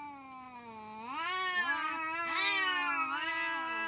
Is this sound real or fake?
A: real